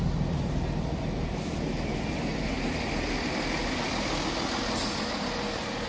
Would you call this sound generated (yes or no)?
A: no